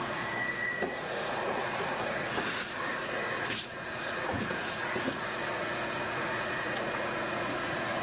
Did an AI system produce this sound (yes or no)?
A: yes